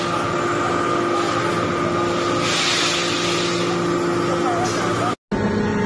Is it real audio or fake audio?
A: real